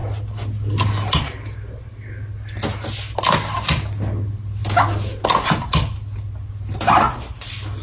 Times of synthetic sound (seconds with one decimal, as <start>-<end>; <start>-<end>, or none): none